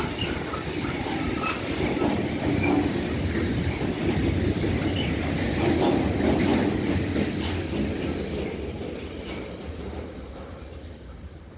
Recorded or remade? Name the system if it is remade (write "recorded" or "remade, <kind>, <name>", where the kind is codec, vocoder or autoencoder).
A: recorded